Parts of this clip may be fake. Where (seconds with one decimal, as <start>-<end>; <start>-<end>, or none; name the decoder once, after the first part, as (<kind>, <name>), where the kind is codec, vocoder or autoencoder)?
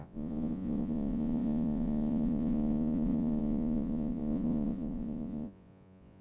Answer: 0.0-6.2 (vocoder, Vocos)